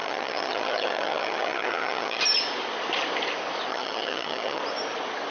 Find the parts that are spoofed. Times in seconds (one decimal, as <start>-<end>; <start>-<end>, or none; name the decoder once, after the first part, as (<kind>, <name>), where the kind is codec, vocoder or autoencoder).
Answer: 0.0-2.2 (vocoder, HiFi-GAN); 3.7-4.6